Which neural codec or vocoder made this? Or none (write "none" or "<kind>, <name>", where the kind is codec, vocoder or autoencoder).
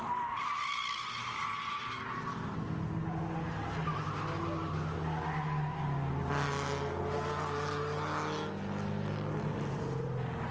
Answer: none